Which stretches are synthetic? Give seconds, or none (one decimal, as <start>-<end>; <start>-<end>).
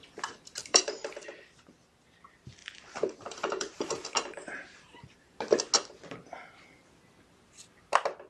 0.6-1.4; 2.6-5.4